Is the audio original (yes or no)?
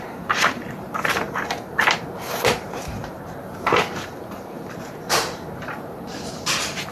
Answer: no